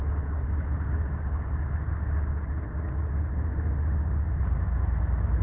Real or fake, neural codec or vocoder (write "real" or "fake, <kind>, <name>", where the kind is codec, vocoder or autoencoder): real